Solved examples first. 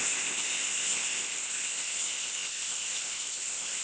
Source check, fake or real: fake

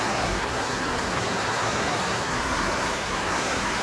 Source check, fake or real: fake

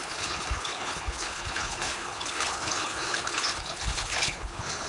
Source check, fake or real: fake